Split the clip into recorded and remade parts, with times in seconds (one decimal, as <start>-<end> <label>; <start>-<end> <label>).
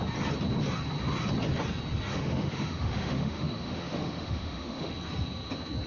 0.0-2.1 recorded; 2.1-4.9 remade; 4.9-5.9 recorded